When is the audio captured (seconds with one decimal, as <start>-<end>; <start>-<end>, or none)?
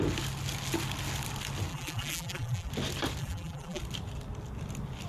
0.0-1.7; 2.7-3.2; 3.8-5.1